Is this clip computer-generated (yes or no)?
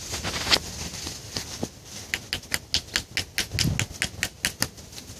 no